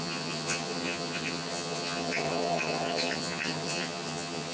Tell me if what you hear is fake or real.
fake